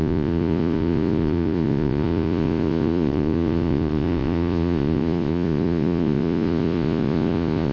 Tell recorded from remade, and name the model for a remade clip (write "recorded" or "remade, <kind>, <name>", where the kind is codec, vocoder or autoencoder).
remade, vocoder, Vocos